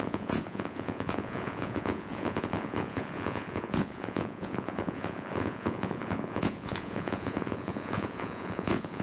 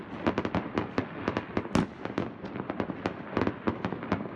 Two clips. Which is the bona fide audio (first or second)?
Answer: second